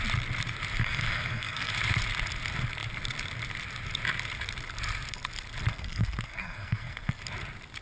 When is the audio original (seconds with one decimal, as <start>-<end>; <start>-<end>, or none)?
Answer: 0.0-0.8; 1.7-5.7; 7.2-7.8